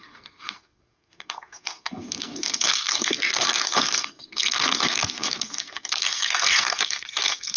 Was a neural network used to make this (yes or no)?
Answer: yes